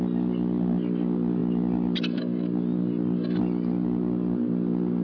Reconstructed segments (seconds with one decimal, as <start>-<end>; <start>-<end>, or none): none